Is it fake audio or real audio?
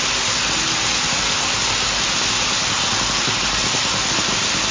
real